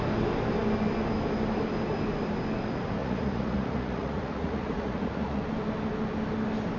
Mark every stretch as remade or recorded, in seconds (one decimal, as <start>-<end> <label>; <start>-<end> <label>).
0.0-3.0 recorded; 3.0-5.4 remade; 5.4-6.8 recorded